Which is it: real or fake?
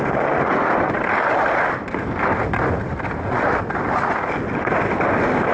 real